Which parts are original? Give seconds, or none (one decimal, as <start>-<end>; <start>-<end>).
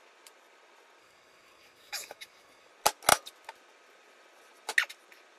0.0-1.0; 2.7-5.4